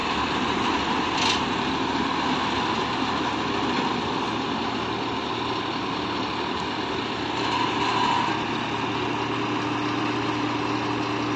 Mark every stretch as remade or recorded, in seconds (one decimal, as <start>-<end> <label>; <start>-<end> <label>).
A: 0.0-11.4 recorded